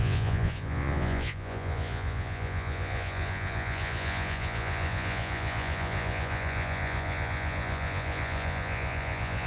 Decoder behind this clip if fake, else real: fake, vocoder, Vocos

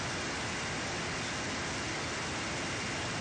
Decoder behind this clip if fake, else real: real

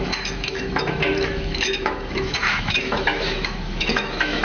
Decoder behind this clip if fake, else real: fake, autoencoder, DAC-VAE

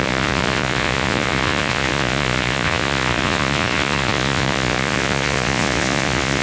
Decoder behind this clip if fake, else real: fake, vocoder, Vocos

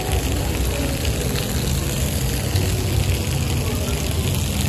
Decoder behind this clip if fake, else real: real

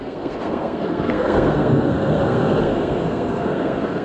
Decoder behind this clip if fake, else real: fake, codec, SNAC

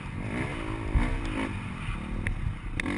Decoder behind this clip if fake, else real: real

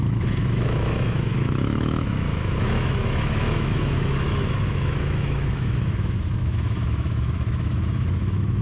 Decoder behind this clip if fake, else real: fake, autoencoder, DAC-VAE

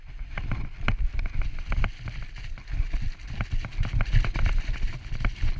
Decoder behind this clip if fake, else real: real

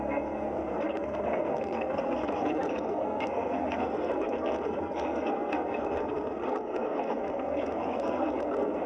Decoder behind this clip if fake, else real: fake, codec, SNAC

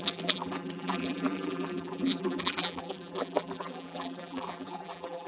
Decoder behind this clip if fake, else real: fake, vocoder, BigVGAN v2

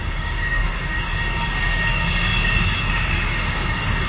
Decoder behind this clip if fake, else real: fake, codec, DAC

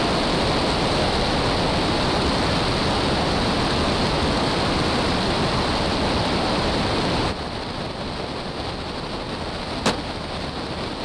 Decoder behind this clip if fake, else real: real